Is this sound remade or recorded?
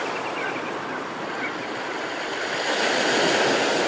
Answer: recorded